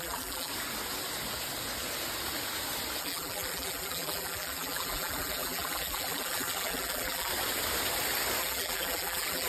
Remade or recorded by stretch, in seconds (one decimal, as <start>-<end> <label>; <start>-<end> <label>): 0.0-0.5 remade; 0.5-3.0 recorded; 3.0-7.3 remade; 7.3-8.4 recorded; 8.4-9.5 remade